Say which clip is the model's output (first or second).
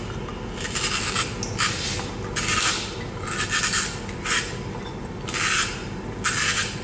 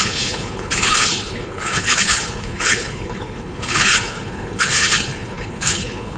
second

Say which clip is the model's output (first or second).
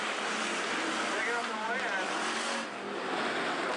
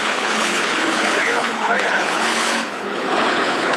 second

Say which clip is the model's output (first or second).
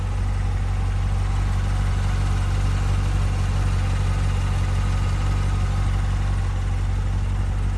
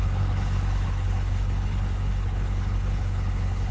second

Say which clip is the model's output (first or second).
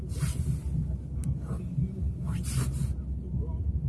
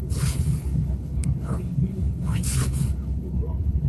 second